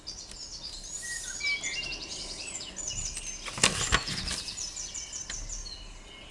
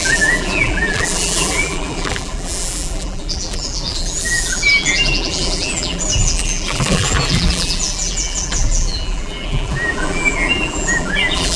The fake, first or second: second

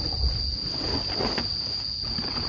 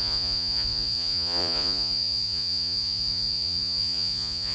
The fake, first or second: second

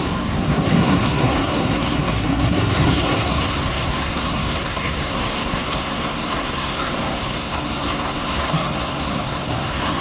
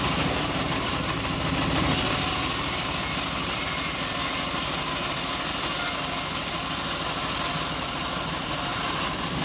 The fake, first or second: first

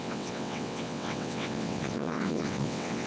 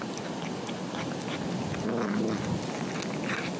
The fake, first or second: first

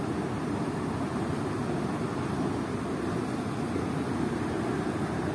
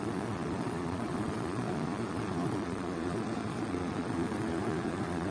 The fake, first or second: second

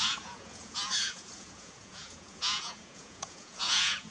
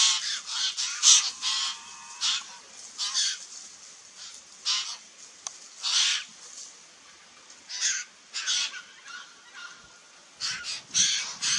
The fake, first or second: first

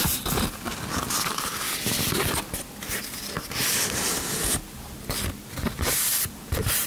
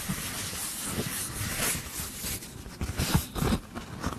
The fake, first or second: first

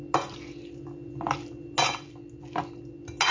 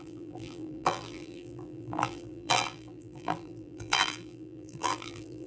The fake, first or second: second